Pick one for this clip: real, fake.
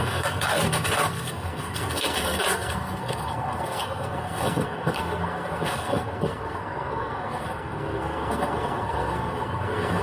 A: fake